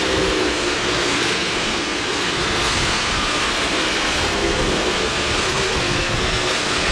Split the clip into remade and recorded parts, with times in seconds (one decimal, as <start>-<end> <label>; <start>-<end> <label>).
0.0-6.9 remade